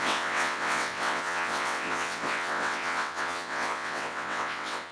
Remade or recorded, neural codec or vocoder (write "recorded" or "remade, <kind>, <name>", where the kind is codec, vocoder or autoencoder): remade, vocoder, WaveNeXt